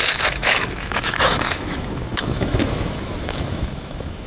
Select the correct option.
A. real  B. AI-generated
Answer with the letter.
B